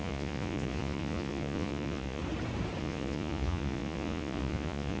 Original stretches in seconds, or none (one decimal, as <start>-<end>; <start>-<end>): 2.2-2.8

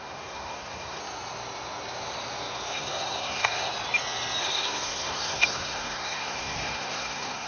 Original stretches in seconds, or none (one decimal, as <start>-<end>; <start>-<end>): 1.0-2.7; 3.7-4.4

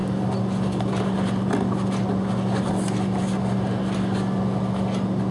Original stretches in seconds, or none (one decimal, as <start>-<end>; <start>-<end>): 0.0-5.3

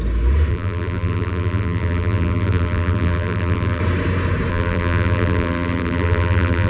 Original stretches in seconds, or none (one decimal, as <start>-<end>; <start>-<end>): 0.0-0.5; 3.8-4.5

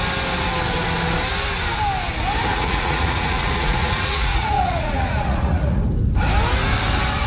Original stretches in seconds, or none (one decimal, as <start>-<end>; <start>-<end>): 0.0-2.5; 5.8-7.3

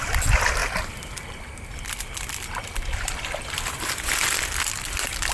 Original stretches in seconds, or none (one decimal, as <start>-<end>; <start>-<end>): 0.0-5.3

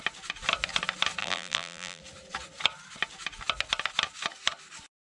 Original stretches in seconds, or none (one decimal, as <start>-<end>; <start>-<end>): 0.0-1.2; 2.0-5.1